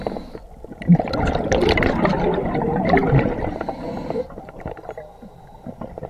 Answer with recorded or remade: recorded